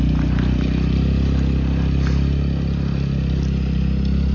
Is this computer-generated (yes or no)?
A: no